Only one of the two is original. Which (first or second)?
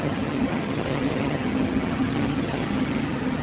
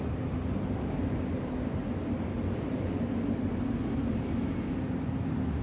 second